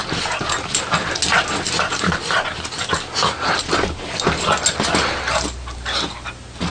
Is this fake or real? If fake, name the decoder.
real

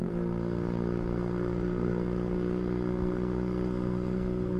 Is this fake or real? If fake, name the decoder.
fake, codec, SNAC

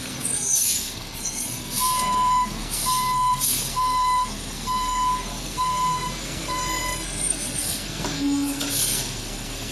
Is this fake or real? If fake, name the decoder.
fake, codec, SNAC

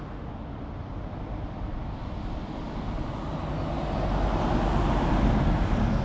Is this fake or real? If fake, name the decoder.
real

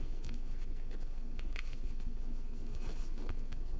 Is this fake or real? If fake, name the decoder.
fake, codec, SNAC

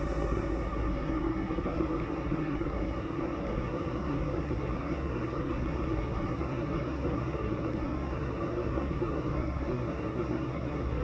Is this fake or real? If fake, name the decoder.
fake, codec, SNAC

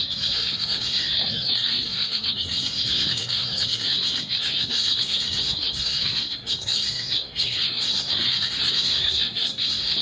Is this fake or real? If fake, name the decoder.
fake, codec, SNAC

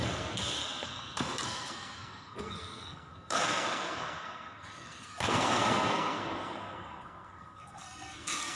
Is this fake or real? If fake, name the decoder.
fake, codec, SNAC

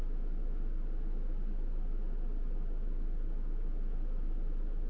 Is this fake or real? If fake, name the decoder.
real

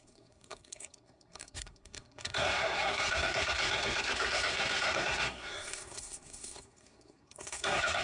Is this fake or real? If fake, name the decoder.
fake, codec, SNAC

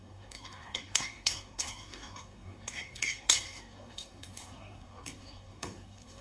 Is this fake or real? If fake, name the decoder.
fake, codec, SNAC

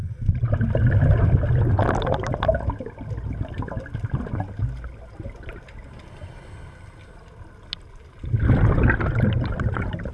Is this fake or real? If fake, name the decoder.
real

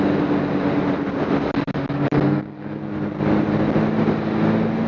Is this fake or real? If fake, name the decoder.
real